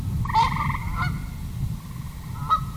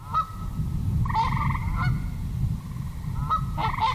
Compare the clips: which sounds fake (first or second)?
first